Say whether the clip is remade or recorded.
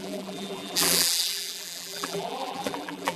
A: remade